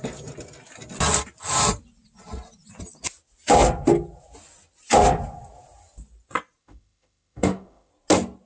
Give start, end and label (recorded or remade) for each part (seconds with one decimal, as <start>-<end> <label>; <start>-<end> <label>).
0.0-6.6 recorded; 6.6-7.9 remade; 7.9-8.5 recorded

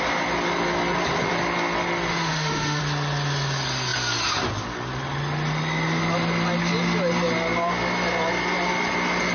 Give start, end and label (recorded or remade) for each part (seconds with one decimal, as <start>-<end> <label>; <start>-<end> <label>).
0.0-2.1 recorded; 2.1-2.8 remade; 2.8-9.3 recorded

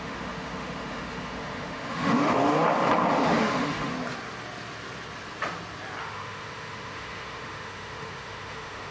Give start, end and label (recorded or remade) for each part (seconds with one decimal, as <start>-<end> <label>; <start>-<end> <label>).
0.0-2.5 remade; 2.5-3.4 recorded; 3.4-3.9 remade; 3.9-6.0 recorded; 6.0-8.9 remade

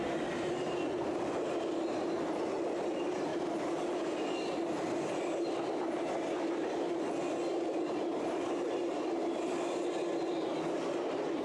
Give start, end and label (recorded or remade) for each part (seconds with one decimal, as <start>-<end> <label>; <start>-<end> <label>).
0.0-11.4 recorded

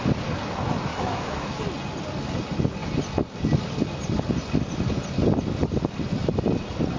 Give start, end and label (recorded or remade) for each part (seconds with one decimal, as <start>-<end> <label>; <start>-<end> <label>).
0.0-0.9 recorded; 0.9-1.6 remade; 1.6-7.0 recorded

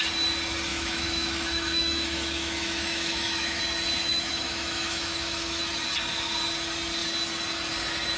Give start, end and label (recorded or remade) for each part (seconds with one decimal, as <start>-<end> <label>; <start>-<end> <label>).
0.0-0.7 recorded; 0.7-3.6 remade; 3.6-4.0 recorded; 4.0-5.6 remade; 5.6-8.2 recorded